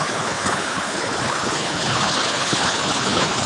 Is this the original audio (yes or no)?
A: no